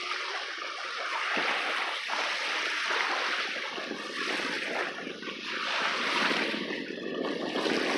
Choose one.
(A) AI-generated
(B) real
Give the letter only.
B